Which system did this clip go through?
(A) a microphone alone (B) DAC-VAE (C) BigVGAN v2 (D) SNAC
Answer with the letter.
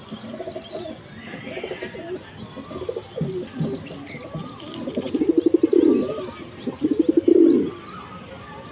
A